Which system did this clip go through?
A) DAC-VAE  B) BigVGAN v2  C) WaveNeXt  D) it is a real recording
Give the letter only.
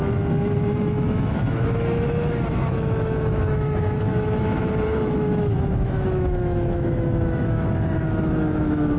A